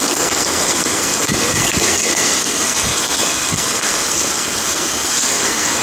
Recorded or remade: remade